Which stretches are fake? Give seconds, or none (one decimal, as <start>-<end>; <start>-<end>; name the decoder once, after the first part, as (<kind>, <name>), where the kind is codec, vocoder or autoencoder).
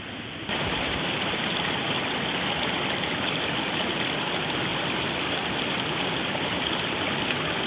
none